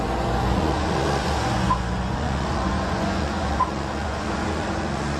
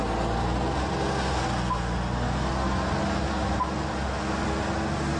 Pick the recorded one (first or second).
second